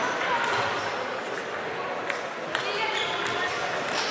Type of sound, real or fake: real